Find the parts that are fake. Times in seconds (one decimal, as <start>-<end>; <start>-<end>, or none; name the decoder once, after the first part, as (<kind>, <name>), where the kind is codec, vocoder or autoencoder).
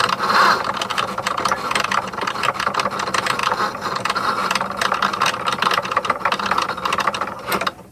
none